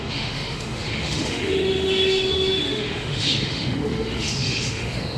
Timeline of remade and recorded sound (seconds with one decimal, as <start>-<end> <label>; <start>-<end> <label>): 0.0-5.2 remade